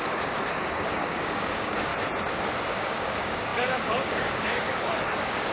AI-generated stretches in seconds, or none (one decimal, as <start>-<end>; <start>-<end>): 0.0-1.9; 2.6-5.5